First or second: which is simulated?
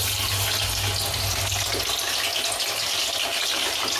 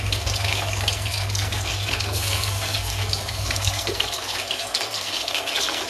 second